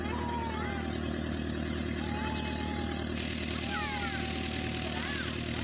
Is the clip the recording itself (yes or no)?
yes